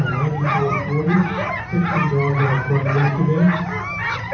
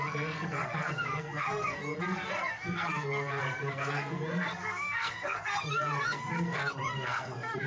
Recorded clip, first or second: first